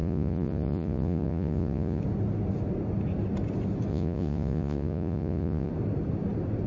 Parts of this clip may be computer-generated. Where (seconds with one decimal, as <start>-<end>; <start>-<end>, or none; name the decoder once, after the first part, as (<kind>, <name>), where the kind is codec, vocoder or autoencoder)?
0.0-2.0 (vocoder, Vocos); 3.9-5.7